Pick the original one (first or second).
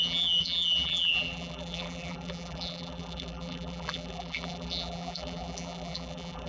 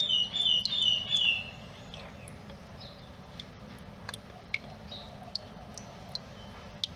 second